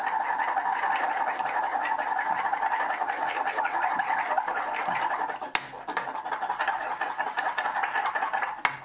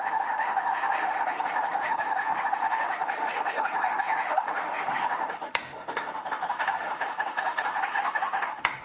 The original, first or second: first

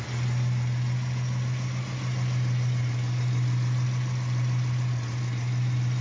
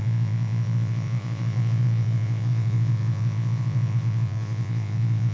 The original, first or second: first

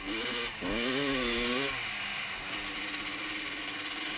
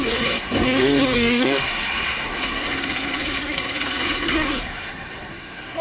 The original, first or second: first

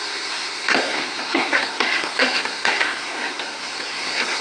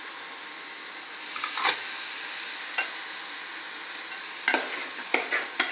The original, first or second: second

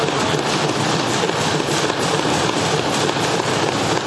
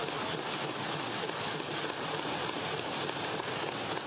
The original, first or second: second